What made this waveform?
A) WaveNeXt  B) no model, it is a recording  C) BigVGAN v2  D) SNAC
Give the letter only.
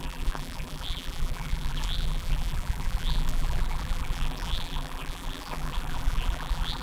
C